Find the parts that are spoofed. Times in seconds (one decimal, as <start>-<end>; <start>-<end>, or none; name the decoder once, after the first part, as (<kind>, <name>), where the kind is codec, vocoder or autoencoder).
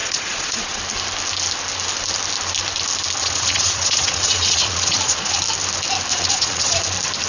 0.0-0.8 (vocoder, Vocos); 3.2-5.4; 6.1-6.8